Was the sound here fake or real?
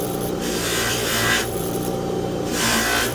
fake